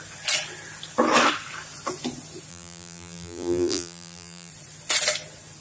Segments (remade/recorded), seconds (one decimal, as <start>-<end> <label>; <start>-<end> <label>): 0.0-2.5 recorded; 2.5-4.5 remade; 4.5-5.6 recorded